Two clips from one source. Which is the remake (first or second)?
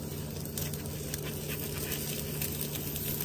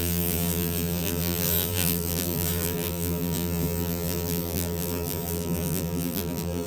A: second